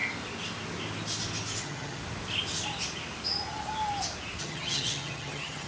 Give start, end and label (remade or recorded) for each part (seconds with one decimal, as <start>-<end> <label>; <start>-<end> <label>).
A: 0.0-1.6 recorded; 1.6-2.0 remade; 2.0-4.4 recorded; 4.4-5.7 remade